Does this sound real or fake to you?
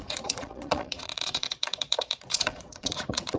fake